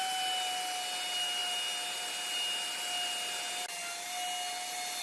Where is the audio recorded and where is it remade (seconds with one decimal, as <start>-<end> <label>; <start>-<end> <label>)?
0.0-5.0 recorded